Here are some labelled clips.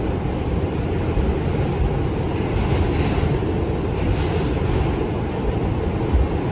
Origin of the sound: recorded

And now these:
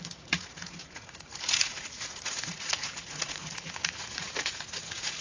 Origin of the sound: remade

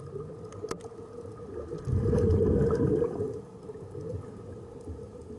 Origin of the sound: recorded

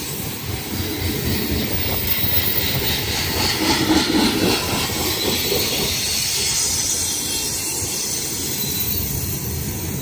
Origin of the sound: recorded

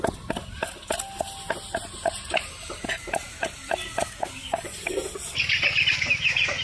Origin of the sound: recorded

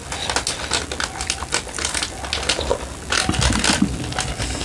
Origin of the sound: recorded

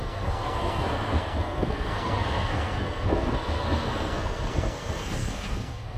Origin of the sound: remade